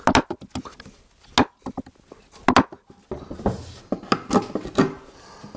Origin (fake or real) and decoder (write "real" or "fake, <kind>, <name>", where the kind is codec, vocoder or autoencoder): real